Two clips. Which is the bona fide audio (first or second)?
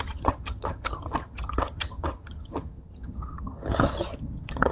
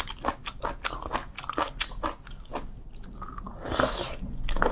second